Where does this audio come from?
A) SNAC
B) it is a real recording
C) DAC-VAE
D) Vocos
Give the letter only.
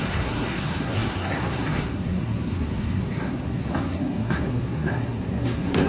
A